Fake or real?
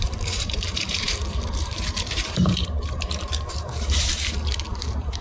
fake